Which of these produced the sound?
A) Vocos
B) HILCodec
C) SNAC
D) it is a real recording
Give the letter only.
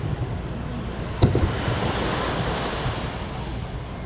D